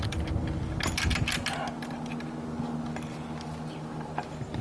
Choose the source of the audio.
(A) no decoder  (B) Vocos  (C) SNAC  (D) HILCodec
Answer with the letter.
A